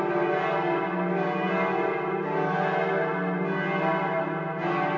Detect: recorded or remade recorded